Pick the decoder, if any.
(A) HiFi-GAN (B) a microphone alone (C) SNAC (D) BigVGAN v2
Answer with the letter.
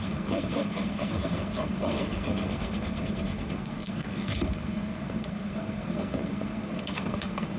C